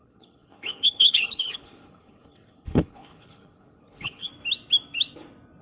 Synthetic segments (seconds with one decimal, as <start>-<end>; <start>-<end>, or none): 0.0-4.3